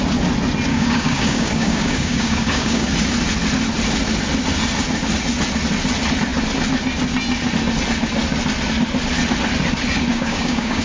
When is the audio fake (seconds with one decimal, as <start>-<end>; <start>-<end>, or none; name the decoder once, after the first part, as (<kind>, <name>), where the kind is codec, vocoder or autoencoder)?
0.7-2.9 (codec, DAC); 10.1-10.8